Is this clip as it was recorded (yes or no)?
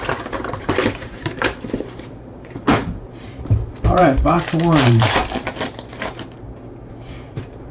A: no